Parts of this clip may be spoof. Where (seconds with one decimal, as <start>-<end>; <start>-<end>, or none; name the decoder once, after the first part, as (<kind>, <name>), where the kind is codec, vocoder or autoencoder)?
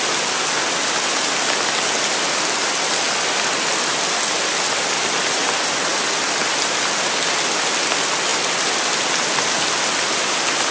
none